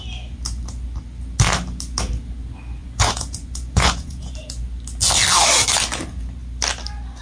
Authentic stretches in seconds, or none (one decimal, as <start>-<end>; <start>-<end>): 0.0-2.8; 4.3-7.2